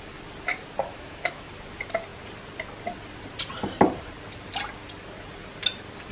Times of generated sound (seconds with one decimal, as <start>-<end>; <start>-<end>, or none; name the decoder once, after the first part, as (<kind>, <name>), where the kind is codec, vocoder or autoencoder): 0.9-1.5 (autoencoder, DAC-VAE)